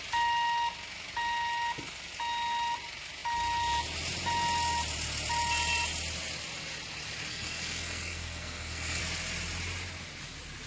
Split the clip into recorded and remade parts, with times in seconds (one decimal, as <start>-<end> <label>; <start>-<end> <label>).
0.0-7.3 recorded; 7.3-9.0 remade; 9.0-10.7 recorded